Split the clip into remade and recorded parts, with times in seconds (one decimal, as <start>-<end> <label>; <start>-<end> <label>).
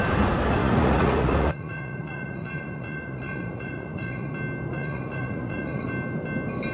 0.0-0.6 recorded; 0.6-4.3 remade; 4.3-4.7 recorded; 4.7-5.9 remade; 5.9-6.7 recorded